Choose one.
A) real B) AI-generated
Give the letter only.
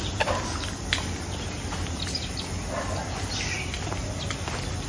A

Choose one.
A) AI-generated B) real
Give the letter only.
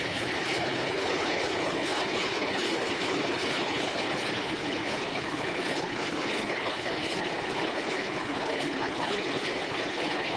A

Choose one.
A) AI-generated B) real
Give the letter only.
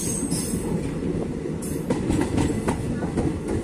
B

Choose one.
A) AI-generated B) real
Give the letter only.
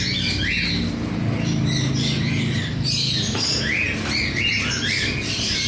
B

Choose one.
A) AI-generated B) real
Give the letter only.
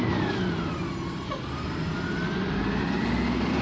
B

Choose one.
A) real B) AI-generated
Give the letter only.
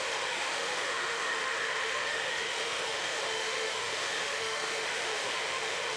B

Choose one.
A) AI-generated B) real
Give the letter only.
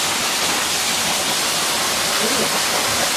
B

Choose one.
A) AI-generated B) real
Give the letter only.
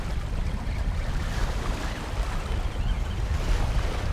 B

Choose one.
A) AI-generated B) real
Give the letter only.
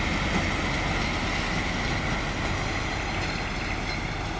B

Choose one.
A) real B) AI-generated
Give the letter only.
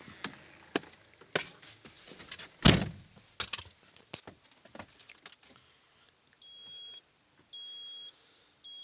A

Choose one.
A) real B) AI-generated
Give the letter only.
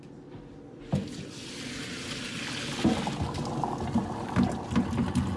A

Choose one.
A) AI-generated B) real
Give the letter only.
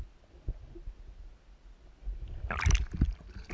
B